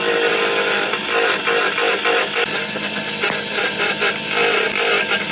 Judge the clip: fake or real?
real